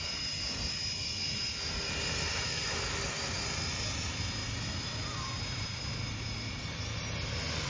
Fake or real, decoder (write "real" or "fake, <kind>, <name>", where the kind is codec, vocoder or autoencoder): real